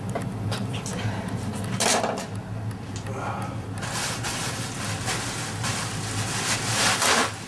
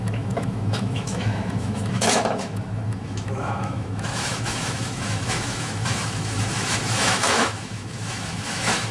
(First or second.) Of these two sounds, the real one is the first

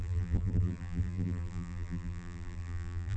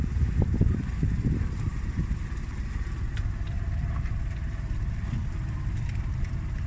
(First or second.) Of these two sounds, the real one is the second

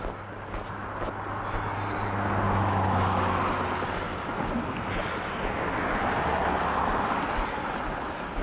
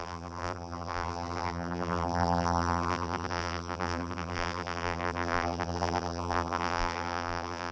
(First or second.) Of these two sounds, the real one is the first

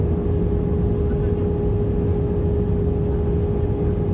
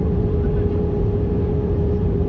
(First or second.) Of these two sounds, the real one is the first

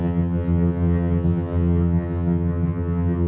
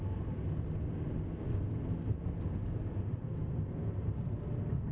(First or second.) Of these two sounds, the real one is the second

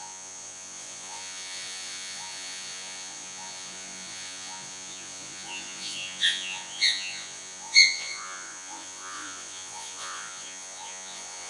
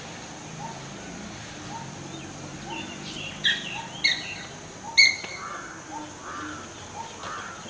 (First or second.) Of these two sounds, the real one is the second